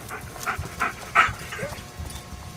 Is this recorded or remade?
recorded